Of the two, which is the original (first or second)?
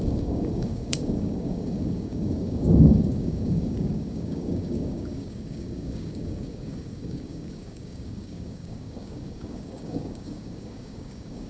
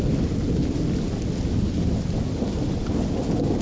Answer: second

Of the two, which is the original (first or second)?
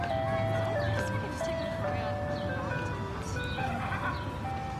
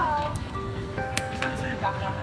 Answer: first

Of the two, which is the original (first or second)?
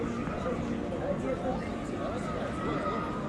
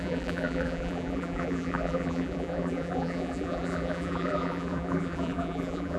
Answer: first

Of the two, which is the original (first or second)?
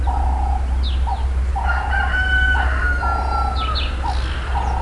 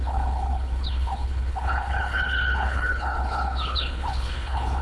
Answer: first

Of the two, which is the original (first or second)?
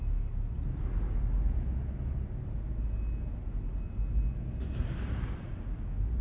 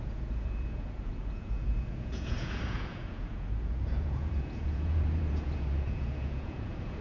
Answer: first